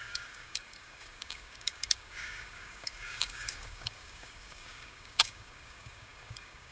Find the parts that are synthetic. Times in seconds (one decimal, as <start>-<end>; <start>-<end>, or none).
0.0-6.7